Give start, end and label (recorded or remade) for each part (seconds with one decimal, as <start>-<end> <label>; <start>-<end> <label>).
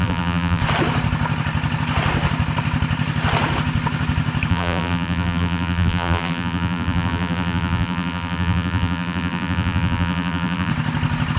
0.0-0.6 remade; 0.6-4.5 recorded; 4.5-10.7 remade; 10.7-11.4 recorded